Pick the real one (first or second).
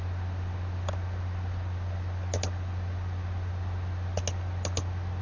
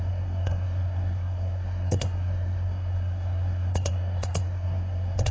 first